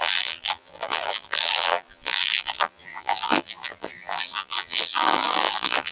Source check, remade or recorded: remade